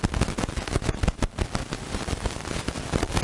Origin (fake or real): real